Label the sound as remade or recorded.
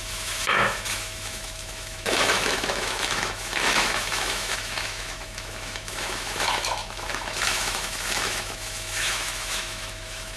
remade